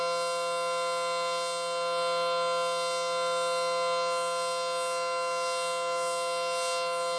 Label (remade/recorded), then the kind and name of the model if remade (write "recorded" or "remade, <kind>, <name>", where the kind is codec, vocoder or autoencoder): recorded